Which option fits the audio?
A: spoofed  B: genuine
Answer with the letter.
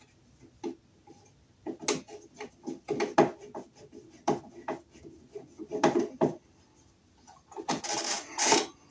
B